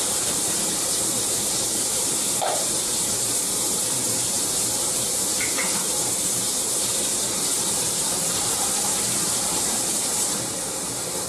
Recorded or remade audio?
remade